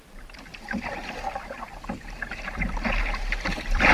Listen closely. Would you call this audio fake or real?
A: fake